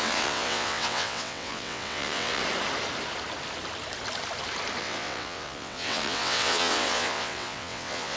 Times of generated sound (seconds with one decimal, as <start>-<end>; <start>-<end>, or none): 0.0-2.4; 4.8-8.2